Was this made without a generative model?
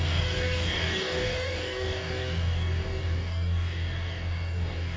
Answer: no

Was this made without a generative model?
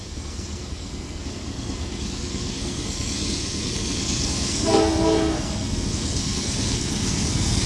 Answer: no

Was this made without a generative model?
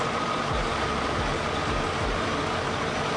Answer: yes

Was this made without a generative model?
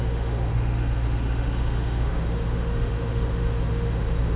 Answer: no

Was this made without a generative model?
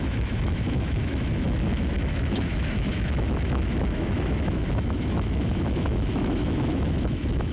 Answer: no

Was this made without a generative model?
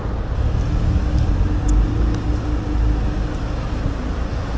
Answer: yes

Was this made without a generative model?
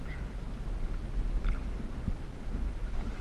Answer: yes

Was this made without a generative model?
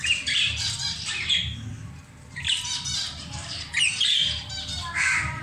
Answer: no